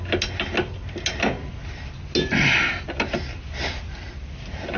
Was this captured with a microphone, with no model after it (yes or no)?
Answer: yes